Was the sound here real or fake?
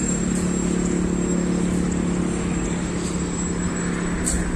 real